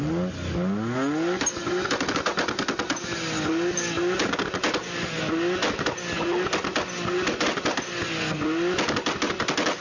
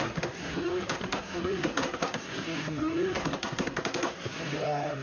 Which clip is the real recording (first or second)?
first